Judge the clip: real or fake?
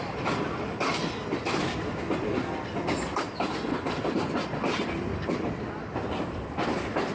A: real